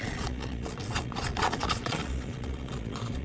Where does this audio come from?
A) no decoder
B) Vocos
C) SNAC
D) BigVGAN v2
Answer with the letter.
B